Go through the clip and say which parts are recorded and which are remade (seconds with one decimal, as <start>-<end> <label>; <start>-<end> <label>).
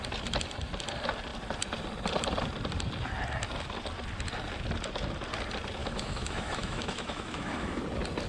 0.0-5.8 recorded; 5.8-7.8 remade; 7.8-8.3 recorded